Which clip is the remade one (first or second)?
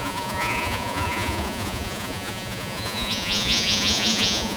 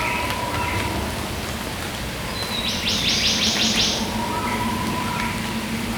first